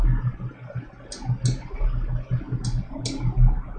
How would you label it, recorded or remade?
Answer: recorded